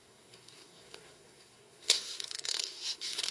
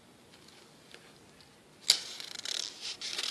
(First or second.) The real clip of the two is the second